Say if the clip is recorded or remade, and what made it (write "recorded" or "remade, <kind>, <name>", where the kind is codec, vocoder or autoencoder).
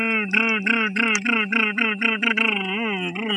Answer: recorded